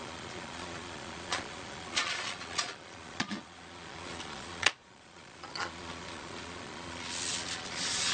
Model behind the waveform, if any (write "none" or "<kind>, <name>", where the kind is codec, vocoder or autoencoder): vocoder, Vocos